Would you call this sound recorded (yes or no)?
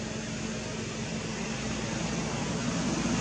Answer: yes